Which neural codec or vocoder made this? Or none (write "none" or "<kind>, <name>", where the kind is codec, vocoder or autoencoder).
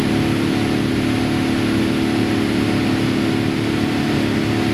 none